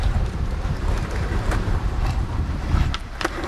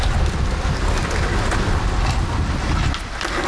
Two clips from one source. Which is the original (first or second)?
second